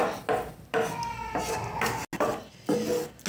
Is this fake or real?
real